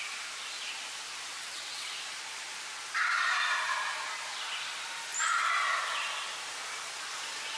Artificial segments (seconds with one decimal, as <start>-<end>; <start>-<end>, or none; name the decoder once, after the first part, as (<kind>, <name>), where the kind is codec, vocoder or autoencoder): 1.3-1.9 (vocoder, WaveNeXt)